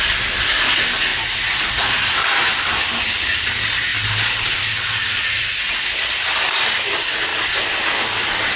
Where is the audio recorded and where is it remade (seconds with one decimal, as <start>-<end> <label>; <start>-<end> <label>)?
0.0-1.1 recorded; 1.1-2.0 remade; 2.0-5.2 recorded; 5.2-5.9 remade; 5.9-8.6 recorded